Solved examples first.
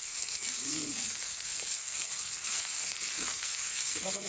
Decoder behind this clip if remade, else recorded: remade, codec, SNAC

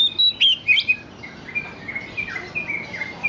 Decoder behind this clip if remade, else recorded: recorded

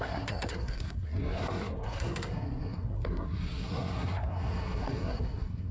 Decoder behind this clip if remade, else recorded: remade, codec, SNAC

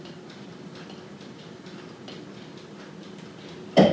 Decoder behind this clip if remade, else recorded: recorded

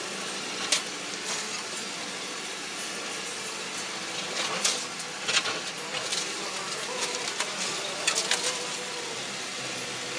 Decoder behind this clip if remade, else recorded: recorded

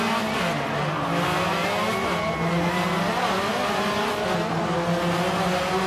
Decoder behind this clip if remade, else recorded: recorded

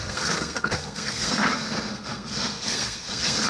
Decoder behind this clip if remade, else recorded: remade, codec, SNAC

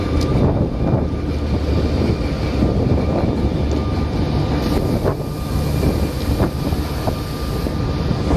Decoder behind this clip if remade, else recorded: recorded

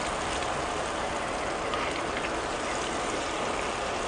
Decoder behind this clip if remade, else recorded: recorded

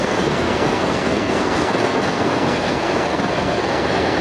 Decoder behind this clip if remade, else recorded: remade, codec, SNAC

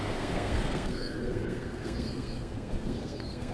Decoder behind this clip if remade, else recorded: remade, codec, SNAC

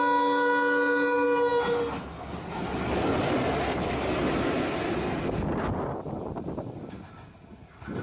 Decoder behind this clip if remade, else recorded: recorded